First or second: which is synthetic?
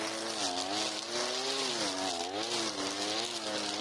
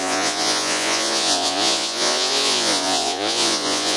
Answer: second